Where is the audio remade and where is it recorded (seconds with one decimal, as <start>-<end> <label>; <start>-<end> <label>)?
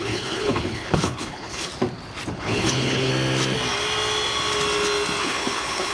0.0-1.7 remade; 1.7-2.3 recorded; 2.3-3.1 remade; 3.1-5.2 recorded; 5.2-5.9 remade